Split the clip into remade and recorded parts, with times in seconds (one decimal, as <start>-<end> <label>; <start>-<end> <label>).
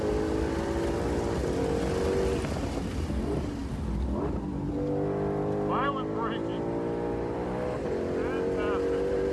0.0-9.3 recorded